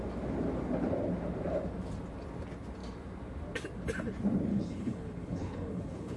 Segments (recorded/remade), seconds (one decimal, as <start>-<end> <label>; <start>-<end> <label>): 0.0-4.5 recorded; 4.5-6.2 remade